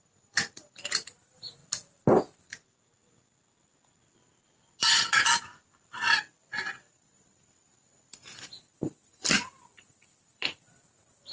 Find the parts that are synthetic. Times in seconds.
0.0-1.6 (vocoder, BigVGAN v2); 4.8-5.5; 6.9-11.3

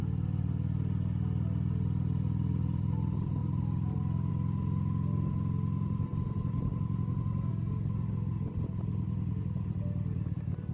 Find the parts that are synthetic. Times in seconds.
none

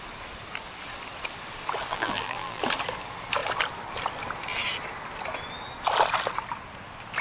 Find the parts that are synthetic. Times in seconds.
1.9-2.6 (vocoder, BigVGAN v2)

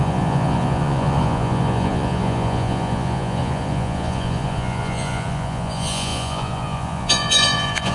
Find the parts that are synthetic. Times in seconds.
0.0-7.9 (vocoder, Vocos)